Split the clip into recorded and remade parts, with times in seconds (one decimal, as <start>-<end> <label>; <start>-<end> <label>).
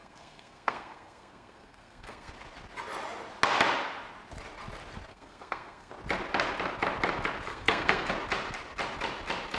0.0-2.3 remade; 2.3-5.1 recorded; 5.1-5.9 remade; 5.9-7.5 recorded; 7.5-8.1 remade; 8.1-9.6 recorded